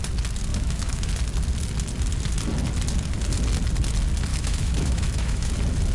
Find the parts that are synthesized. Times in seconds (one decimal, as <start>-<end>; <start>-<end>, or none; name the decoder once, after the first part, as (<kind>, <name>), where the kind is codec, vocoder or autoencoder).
0.5-1.1 (autoencoder, DAC-VAE); 4.3-5.5